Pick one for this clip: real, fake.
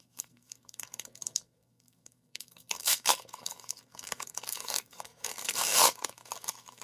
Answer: fake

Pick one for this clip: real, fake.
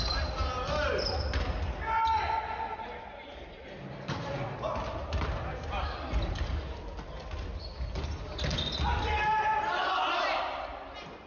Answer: real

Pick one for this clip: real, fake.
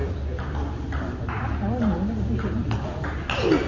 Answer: real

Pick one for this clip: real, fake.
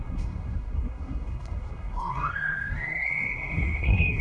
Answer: fake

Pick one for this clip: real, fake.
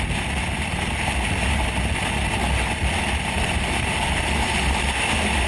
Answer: real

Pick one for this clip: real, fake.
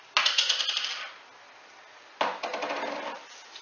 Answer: real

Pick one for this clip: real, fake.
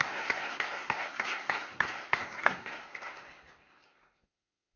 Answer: fake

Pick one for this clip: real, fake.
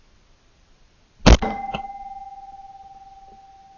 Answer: real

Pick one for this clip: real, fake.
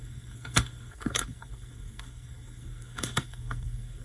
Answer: fake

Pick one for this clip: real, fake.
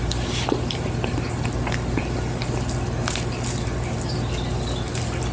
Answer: real